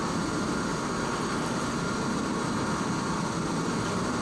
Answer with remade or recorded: recorded